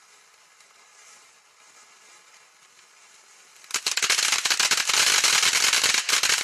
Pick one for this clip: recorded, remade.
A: recorded